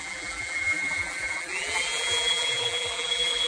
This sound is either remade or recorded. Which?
remade